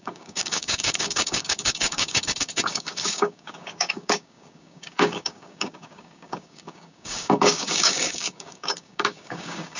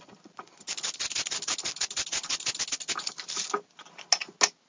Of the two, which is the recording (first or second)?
second